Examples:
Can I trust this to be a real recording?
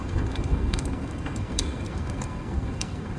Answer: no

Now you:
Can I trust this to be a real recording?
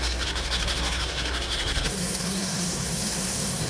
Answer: no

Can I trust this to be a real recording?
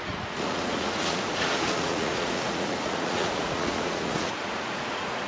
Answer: no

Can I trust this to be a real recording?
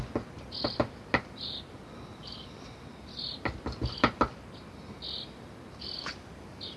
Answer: yes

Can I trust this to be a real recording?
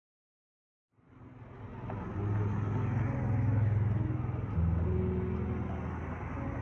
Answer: yes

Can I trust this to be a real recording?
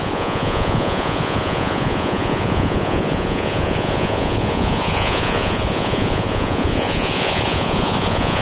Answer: no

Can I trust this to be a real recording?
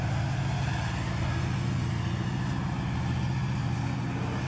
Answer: yes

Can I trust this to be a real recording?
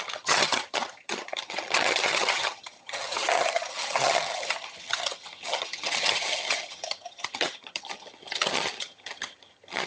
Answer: no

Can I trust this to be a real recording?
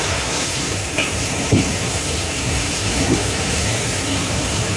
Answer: no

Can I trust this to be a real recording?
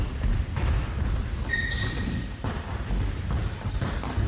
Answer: yes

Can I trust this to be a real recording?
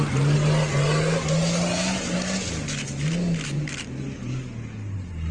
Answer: yes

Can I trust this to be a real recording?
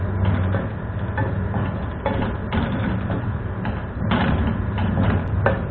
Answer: no